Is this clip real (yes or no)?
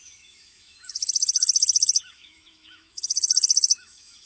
no